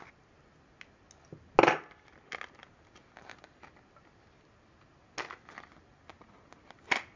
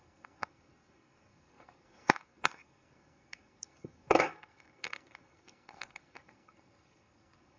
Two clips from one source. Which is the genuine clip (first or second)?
first